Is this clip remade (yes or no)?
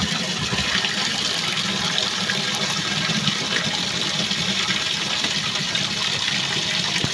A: no